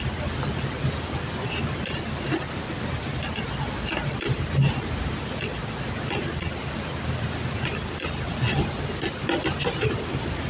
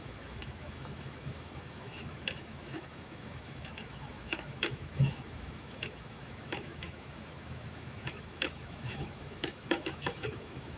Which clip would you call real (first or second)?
first